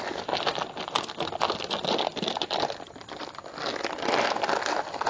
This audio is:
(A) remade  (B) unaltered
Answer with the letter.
B